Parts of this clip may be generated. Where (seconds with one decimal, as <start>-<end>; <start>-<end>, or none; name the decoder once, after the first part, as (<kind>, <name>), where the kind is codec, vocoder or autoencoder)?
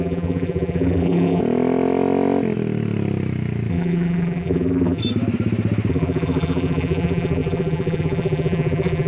0.0-1.4 (vocoder, BigVGAN v2); 3.7-5.0; 5.9-9.1